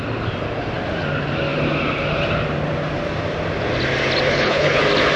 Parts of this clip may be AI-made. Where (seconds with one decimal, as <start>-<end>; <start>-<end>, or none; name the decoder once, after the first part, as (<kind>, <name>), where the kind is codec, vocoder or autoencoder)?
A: 4.3-4.8 (codec, HILCodec)